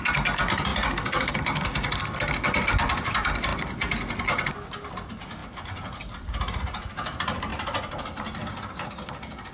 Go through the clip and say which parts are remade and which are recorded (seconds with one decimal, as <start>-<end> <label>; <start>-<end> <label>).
0.0-9.5 recorded